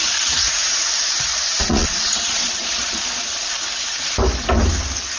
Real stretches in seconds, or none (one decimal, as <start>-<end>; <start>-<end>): 0.0-1.3; 3.6-5.2